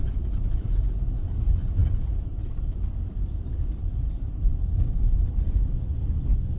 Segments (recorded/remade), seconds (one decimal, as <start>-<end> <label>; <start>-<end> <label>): 0.0-6.6 remade